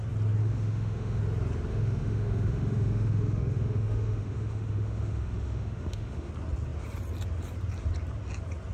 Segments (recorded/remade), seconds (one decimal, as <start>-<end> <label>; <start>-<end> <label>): 0.0-0.4 recorded; 0.4-1.2 remade; 1.2-1.7 recorded; 1.7-6.3 remade; 6.3-8.7 recorded